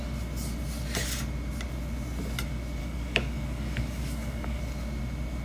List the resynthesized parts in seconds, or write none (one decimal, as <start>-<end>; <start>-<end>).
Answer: 2.8-4.6